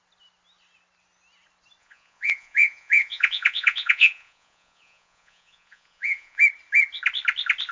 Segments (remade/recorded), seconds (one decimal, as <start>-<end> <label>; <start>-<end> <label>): 0.0-1.8 recorded; 1.8-6.4 remade; 6.4-7.7 recorded